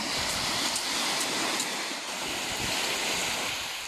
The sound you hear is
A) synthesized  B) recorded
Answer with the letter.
B